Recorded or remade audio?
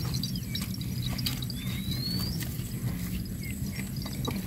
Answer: recorded